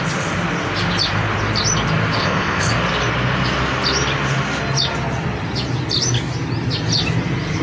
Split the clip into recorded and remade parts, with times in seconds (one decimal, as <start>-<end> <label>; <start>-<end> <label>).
0.0-2.2 recorded; 2.2-2.7 remade; 2.7-7.6 recorded